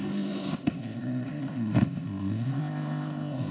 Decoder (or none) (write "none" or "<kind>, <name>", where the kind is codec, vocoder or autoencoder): codec, ZipCodec